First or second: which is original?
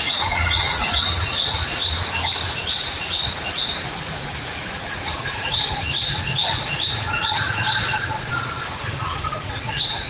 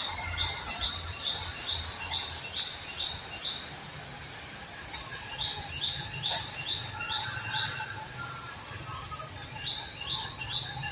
second